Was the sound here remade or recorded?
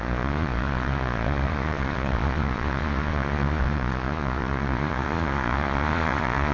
remade